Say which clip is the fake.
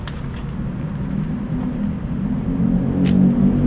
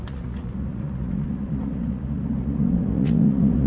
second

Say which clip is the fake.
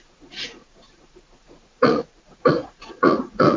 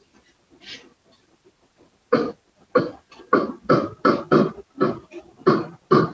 first